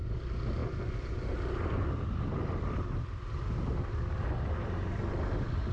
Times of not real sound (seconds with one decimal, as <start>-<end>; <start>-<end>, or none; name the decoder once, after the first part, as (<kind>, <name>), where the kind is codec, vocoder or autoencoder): none

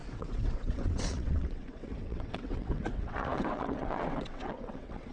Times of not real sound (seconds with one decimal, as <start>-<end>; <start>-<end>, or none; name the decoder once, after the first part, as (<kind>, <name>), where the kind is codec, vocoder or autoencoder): 0.0-5.1 (vocoder, WaveNeXt)

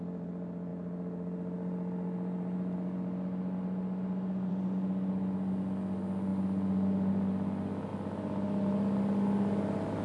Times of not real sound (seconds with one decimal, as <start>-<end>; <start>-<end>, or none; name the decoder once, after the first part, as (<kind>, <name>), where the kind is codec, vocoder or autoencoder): none

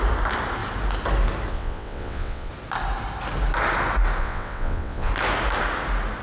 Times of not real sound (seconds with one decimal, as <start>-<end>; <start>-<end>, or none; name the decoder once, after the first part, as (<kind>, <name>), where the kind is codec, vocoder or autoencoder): 1.5-2.5 (vocoder, WaveNeXt); 4.2-5.1

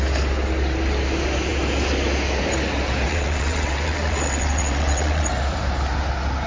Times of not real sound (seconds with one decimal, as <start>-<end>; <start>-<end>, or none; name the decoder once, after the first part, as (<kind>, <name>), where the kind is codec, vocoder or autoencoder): 3.1-5.3 (vocoder, WaveNeXt)